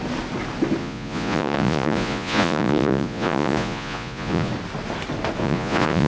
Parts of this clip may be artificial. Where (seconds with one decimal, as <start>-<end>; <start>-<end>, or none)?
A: 0.8-4.5; 5.4-6.1